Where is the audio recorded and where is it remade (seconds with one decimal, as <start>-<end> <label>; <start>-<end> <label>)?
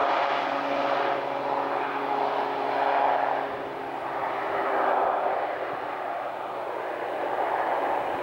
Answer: 0.0-8.2 recorded